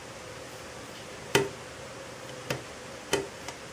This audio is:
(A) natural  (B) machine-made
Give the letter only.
A